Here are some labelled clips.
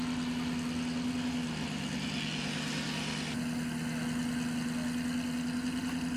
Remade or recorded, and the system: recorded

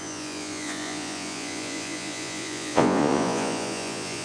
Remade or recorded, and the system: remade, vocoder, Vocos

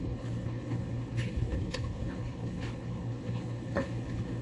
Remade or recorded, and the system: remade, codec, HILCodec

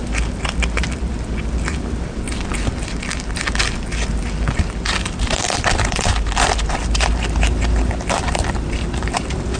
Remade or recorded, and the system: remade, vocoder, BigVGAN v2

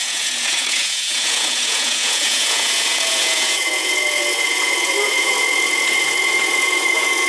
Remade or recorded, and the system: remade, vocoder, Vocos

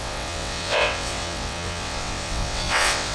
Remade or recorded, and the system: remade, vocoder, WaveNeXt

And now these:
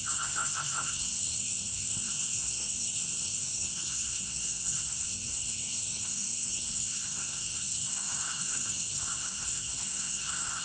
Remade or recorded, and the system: remade, codec, SNAC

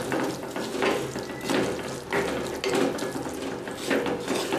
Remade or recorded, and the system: recorded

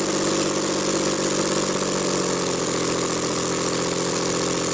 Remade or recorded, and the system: recorded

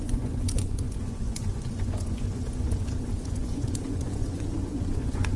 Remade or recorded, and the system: remade, vocoder, Vocos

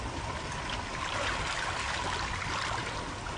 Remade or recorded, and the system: recorded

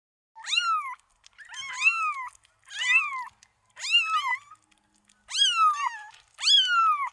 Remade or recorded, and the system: recorded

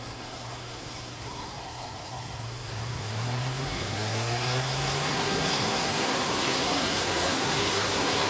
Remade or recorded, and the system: remade, codec, SNAC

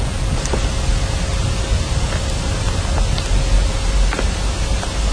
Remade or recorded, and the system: recorded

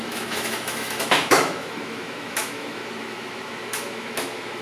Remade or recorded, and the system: remade, autoencoder, DAC-VAE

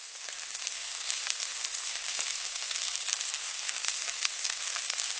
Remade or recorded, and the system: remade, codec, SNAC